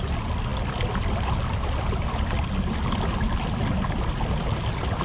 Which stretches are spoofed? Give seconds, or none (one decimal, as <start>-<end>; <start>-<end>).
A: none